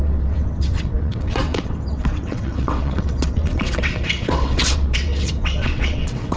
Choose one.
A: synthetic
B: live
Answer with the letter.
A